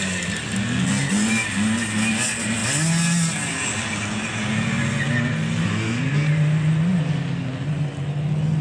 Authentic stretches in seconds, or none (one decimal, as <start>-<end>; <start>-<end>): 0.0-8.6